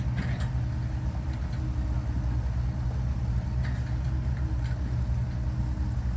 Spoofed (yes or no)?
no